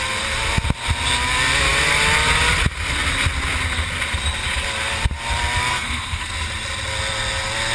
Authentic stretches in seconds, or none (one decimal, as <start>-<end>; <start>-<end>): 0.0-5.7; 6.3-7.7